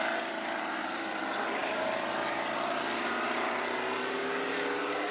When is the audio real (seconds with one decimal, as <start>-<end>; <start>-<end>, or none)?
0.0-5.1